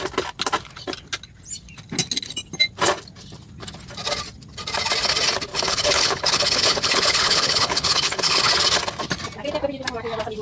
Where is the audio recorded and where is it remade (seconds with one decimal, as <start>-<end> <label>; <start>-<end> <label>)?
0.0-5.5 recorded; 5.5-8.4 remade; 8.4-10.4 recorded

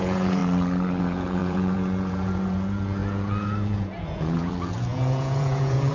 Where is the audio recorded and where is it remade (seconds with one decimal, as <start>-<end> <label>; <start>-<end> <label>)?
0.0-0.4 remade; 0.4-1.0 recorded; 1.0-5.9 remade